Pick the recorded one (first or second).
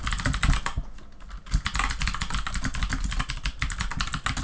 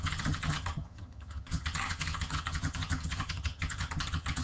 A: first